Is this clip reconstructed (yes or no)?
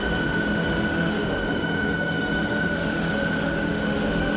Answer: yes